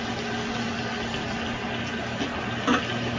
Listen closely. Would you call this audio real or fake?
real